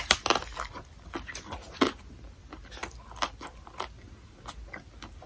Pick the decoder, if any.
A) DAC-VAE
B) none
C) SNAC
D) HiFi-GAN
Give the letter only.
B